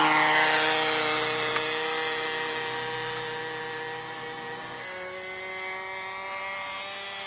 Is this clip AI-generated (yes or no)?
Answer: no